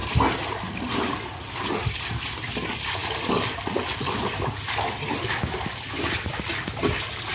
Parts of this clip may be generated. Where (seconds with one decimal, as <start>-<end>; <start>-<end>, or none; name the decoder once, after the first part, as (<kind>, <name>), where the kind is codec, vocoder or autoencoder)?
0.0-2.3 (vocoder, BigVGAN v2); 3.0-5.3

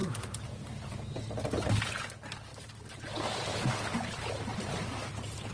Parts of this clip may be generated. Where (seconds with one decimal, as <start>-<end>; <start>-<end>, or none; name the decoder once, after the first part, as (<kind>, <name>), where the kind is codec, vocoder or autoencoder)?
0.0-1.7 (vocoder, BigVGAN v2); 4.5-5.1

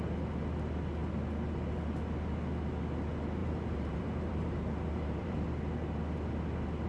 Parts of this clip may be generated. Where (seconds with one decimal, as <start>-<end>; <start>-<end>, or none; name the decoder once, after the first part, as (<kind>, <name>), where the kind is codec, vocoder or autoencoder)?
3.4-5.4 (vocoder, BigVGAN v2)

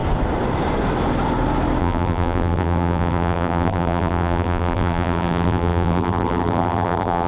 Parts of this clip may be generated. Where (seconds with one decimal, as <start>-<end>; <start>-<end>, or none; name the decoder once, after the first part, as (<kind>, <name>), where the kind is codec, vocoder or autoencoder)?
1.8-7.3 (vocoder, BigVGAN v2)

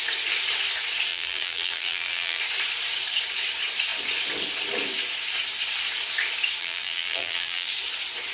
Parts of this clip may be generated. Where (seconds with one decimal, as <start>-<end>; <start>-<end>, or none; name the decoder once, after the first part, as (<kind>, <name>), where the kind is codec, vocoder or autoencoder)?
1.1-2.4 (vocoder, BigVGAN v2); 6.6-7.7

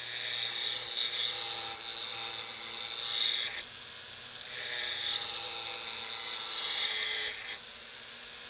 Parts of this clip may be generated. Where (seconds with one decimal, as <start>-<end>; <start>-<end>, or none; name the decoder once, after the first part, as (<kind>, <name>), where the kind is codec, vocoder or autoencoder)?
none

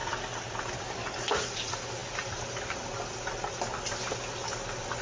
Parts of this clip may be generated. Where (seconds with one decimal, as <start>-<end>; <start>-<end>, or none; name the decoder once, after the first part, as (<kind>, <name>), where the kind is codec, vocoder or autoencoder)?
0.0-0.6 (vocoder, BigVGAN v2)

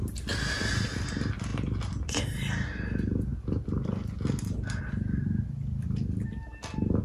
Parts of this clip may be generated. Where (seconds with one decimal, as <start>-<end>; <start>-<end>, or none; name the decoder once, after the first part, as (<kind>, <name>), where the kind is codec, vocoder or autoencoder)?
none